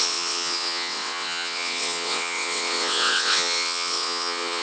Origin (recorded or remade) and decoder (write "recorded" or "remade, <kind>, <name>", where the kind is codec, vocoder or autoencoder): remade, vocoder, WaveNeXt